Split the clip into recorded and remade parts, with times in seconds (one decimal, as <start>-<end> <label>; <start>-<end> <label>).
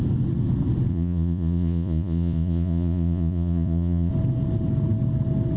0.0-0.9 recorded; 0.9-4.1 remade; 4.1-5.6 recorded